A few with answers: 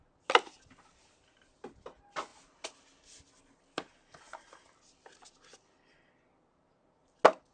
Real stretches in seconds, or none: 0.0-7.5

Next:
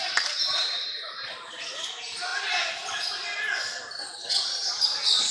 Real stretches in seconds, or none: 0.0-5.3